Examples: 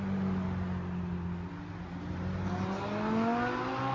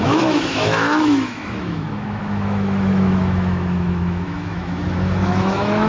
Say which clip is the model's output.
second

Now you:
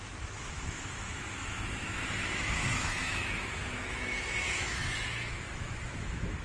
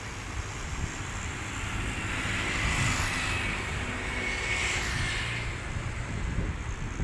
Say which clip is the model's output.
first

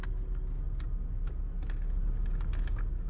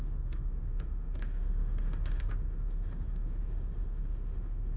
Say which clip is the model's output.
second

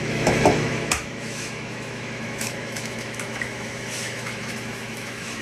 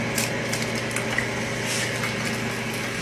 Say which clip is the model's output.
first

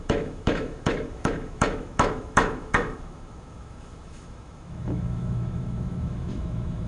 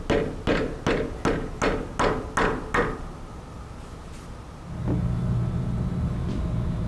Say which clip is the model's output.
first